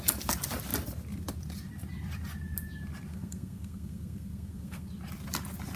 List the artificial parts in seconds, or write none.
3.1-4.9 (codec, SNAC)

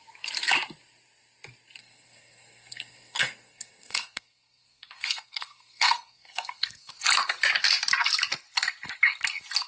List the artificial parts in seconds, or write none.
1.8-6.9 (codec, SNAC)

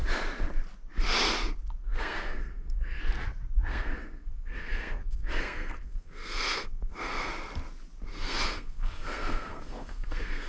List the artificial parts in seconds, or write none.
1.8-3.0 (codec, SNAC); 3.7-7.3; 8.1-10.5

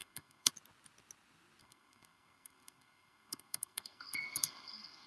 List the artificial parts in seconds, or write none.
0.0-0.5 (codec, SNAC); 1.6-5.1

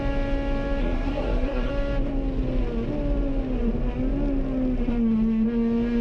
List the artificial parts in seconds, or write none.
0.8-1.7 (codec, SNAC)